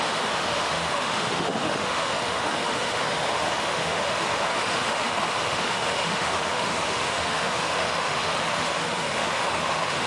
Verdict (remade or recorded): remade